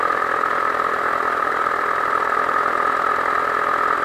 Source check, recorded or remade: recorded